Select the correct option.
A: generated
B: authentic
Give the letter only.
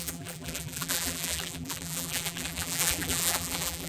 A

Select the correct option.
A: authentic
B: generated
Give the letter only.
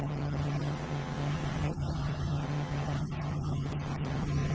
B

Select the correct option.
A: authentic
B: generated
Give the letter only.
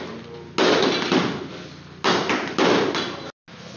A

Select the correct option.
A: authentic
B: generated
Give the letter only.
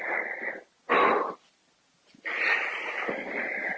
A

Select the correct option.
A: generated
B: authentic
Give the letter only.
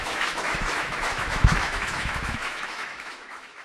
A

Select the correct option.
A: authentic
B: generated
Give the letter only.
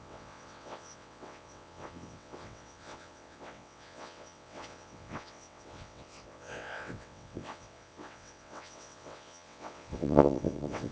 B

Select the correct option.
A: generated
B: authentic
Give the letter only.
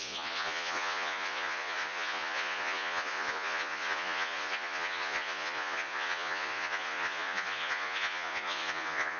A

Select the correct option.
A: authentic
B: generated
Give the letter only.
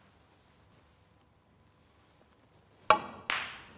A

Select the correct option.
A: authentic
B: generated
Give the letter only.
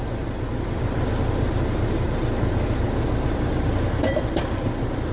B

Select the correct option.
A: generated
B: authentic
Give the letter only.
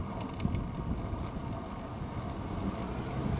B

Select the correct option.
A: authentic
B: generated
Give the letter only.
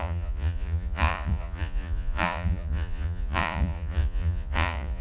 B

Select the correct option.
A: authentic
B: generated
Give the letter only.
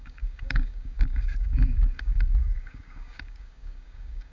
B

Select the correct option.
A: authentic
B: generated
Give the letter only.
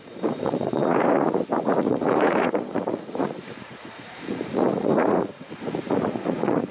B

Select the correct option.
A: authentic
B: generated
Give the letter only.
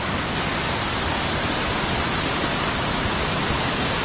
A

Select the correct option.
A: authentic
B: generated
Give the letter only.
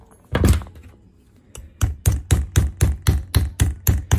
A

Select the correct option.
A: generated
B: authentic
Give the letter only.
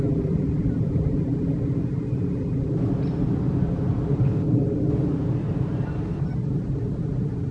B